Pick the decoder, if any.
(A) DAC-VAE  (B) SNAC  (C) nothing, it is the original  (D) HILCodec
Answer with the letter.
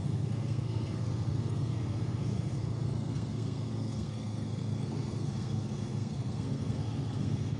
B